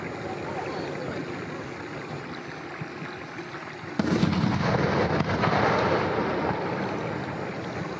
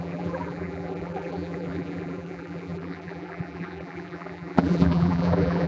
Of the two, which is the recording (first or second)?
first